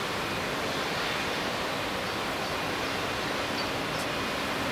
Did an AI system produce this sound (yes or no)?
no